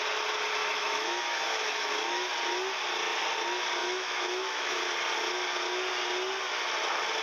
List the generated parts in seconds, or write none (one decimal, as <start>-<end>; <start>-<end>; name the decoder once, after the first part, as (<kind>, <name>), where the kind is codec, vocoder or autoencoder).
0.6-2.3 (autoencoder, DAC-VAE); 3.8-4.8